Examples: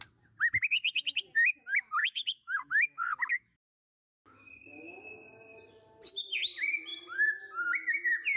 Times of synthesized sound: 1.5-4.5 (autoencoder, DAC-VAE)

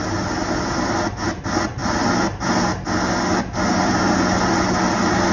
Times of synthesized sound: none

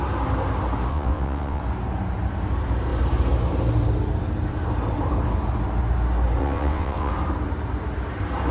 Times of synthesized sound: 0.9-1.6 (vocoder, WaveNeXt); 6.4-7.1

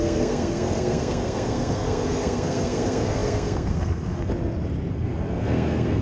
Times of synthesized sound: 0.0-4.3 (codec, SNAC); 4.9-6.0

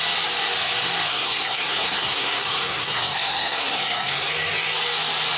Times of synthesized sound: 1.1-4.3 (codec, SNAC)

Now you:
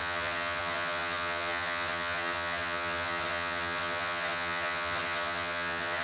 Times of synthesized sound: 0.0-6.0 (vocoder, HiFi-GAN)

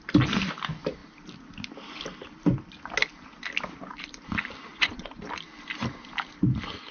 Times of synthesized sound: 4.7-5.2 (vocoder, Vocos)

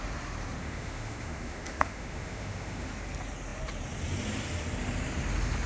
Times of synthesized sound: 0.6-2.9 (autoencoder, DAC-VAE)